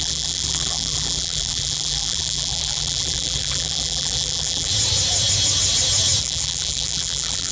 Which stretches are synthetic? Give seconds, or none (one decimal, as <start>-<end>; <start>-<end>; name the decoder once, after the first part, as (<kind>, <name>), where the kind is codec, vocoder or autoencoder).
0.0-4.7 (vocoder, BigVGAN v2); 6.2-7.5